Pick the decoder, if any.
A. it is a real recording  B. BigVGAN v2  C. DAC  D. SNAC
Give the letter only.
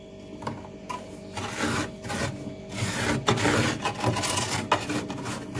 A